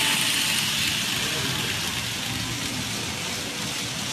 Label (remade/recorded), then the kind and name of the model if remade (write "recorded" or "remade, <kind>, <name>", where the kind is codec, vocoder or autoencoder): recorded